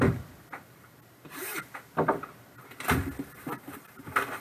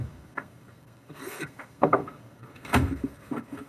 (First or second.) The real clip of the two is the first